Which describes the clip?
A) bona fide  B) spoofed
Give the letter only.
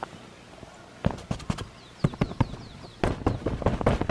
A